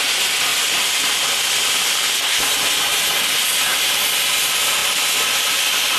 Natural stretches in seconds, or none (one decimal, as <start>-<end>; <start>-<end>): 0.0-0.5; 1.2-3.7; 4.3-4.8